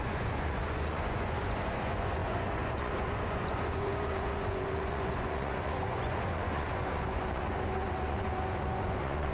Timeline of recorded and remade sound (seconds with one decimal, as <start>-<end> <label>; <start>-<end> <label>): 0.0-9.3 remade